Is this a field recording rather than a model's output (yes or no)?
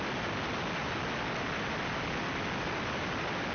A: yes